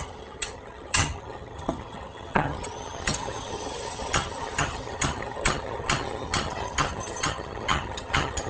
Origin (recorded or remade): remade